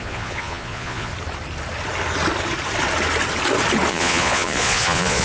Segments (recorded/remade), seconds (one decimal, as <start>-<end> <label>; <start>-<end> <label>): 0.0-1.1 remade; 1.1-3.9 recorded; 3.9-5.2 remade